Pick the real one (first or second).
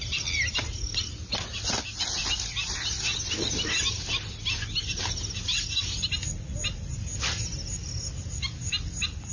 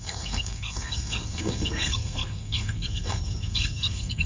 first